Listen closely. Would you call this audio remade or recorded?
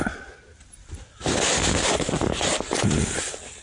remade